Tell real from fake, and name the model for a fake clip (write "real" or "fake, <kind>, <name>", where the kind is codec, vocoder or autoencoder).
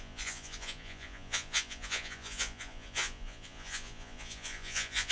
fake, vocoder, Vocos